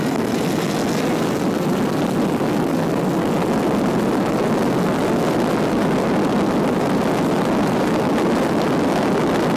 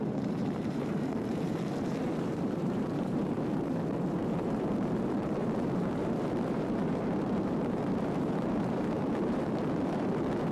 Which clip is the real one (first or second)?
first